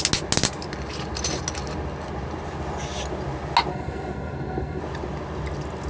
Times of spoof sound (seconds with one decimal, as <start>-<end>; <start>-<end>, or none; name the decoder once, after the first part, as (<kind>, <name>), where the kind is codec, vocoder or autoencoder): 3.7-4.8 (codec, SNAC)